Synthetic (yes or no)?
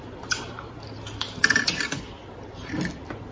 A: no